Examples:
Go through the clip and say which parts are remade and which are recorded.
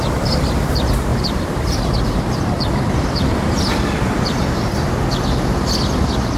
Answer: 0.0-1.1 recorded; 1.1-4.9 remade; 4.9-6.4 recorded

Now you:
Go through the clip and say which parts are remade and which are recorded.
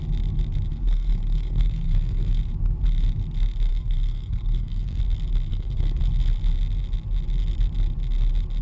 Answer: 0.0-0.7 recorded; 0.7-2.4 remade; 2.4-3.7 recorded; 3.7-5.0 remade; 5.0-5.5 recorded; 5.5-6.0 remade; 6.0-8.6 recorded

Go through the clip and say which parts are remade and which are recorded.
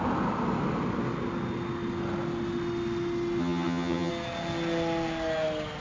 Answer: 0.0-3.4 recorded; 3.4-4.1 remade; 4.1-5.8 recorded